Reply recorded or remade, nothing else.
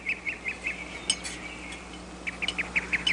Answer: recorded